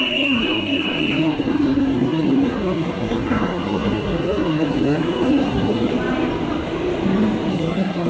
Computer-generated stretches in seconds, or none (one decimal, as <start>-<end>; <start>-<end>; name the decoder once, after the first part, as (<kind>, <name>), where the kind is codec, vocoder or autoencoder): 0.0-5.9 (codec, SNAC); 7.5-8.1